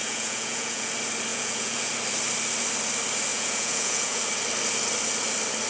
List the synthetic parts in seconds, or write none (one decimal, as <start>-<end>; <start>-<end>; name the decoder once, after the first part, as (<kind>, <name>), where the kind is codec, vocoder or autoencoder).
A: 0.0-0.9 (vocoder, Vocos); 1.3-1.9; 3.3-4.2